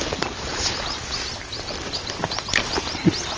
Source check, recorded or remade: recorded